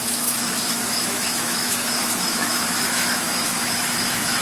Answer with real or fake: fake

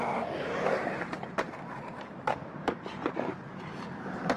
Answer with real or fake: fake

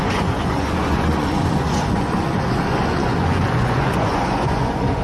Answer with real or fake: fake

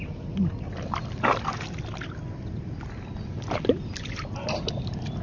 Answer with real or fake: real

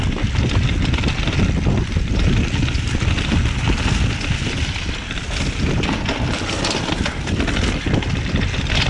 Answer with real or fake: real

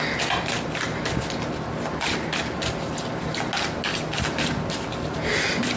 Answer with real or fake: real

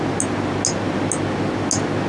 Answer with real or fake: real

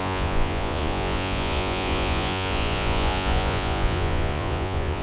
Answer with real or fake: fake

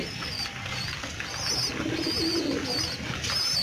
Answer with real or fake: real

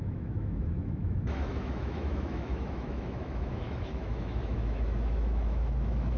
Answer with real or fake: fake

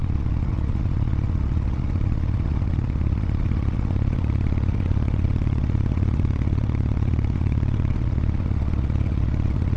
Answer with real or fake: fake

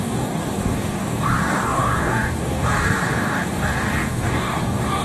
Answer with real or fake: fake